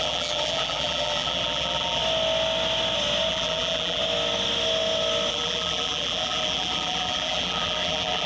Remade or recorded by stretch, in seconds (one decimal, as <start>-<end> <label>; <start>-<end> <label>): 0.0-2.0 remade; 2.0-3.3 recorded; 3.3-4.0 remade; 4.0-5.3 recorded; 5.3-8.3 remade